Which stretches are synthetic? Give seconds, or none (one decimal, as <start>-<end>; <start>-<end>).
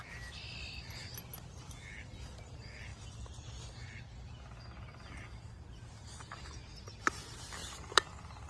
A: none